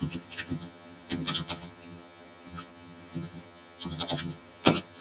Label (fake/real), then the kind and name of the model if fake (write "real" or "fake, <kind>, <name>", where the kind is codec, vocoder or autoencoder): fake, vocoder, HiFi-GAN